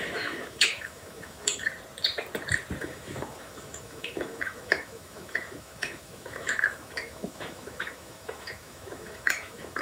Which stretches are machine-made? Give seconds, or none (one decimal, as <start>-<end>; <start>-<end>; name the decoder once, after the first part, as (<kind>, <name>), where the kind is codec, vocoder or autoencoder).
0.0-1.7 (autoencoder, DAC-VAE); 2.8-9.8